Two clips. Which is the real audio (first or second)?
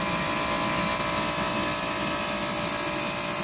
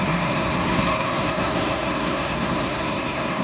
first